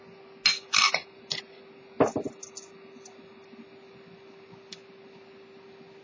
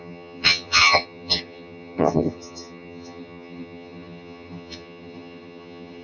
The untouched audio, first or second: first